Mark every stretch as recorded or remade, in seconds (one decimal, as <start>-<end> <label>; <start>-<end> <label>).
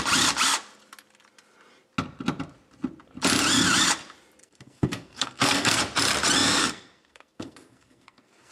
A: 0.0-4.4 recorded; 4.4-5.8 remade; 5.8-6.6 recorded; 6.6-8.5 remade